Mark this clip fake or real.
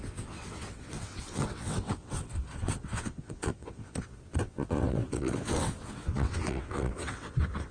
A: fake